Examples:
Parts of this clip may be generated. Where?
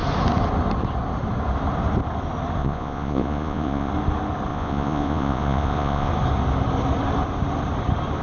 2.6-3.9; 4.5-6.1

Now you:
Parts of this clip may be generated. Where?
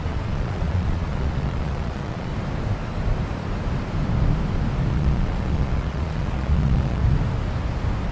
0.0-2.3; 4.9-7.0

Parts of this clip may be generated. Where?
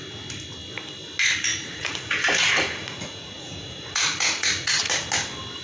1.5-4.9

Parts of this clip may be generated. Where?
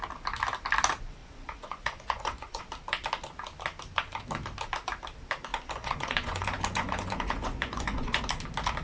1.2-2.6; 5.5-8.2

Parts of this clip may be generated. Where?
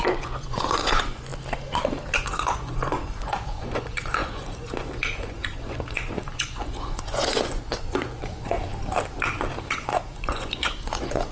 0.0-1.3; 2.2-8.6; 9.7-11.3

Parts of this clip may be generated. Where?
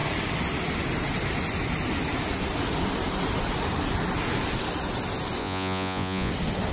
5.4-6.3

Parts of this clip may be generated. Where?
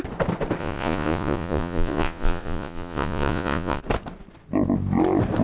0.6-3.8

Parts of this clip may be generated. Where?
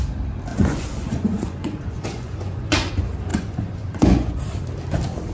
0.5-2.9; 3.3-4.4